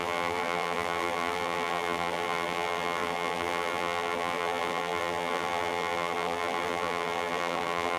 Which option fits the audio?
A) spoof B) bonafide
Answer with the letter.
A